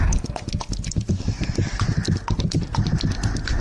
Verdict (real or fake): real